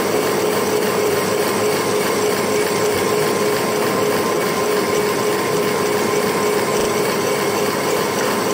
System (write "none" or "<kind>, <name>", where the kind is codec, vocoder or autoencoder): none